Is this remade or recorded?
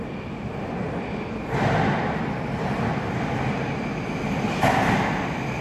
recorded